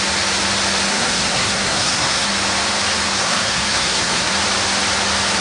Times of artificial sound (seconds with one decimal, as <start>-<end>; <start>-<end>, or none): 0.9-2.3; 3.2-4.3